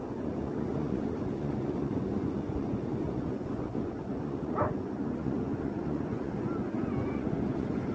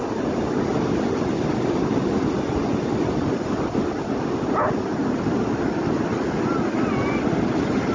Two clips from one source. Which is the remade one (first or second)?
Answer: first